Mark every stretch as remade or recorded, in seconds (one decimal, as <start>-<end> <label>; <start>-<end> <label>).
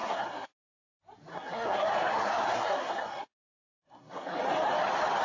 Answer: 0.0-0.6 remade; 0.6-1.3 recorded; 1.3-4.4 remade; 4.4-5.2 recorded